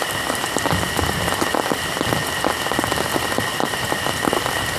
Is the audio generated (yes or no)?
no